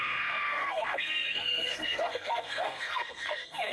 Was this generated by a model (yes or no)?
yes